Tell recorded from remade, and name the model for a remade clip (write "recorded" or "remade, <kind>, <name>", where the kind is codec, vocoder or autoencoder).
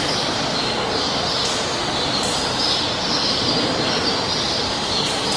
recorded